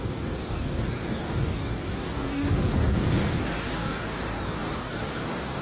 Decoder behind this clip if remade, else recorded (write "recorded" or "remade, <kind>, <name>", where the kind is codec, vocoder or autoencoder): remade, codec, DAC